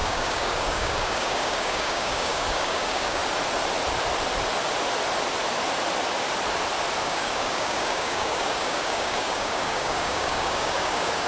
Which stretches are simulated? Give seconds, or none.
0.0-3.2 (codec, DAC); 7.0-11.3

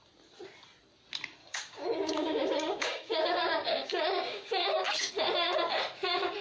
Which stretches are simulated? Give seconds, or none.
1.4-5.1 (codec, DAC)